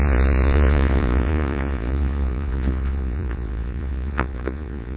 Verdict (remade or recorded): remade